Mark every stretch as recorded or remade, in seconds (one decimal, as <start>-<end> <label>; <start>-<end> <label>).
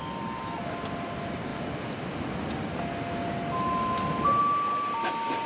0.0-0.6 remade; 0.6-5.5 recorded